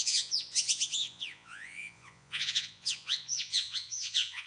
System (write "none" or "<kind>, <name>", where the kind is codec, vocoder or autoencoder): vocoder, Vocos